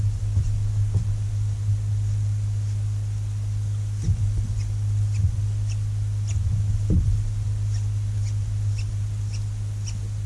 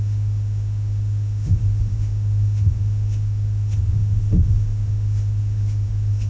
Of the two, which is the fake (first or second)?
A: second